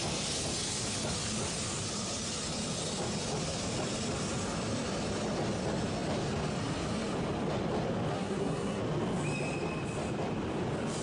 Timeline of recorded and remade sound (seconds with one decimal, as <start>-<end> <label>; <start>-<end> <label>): 0.0-8.1 recorded; 8.1-8.8 remade; 8.8-11.0 recorded

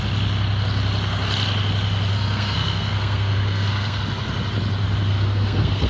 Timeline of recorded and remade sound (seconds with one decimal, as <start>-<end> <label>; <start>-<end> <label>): 0.0-2.1 recorded; 2.1-4.0 remade; 4.0-5.1 recorded; 5.1-5.9 remade

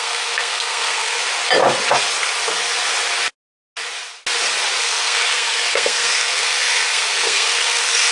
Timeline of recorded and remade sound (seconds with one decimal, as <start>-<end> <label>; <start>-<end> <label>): 0.0-1.2 remade; 1.2-4.8 recorded; 4.8-8.1 remade

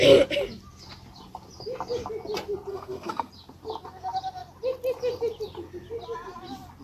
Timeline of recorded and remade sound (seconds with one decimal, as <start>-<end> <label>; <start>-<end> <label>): 0.0-2.7 recorded; 2.7-3.3 remade; 3.3-6.8 recorded

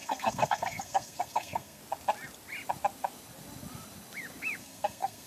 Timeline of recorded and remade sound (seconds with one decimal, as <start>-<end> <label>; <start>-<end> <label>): 0.0-1.8 remade; 1.8-4.6 recorded; 4.6-5.3 remade